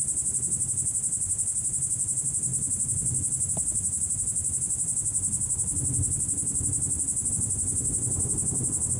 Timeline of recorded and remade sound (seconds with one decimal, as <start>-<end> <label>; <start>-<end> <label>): 0.0-9.0 recorded